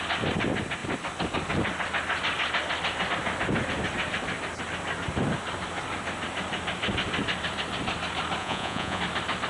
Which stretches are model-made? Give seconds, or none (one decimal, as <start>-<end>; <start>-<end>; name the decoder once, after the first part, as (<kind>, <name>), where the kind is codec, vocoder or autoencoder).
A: 8.4-9.0 (vocoder, Vocos)